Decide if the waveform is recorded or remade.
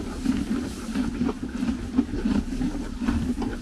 recorded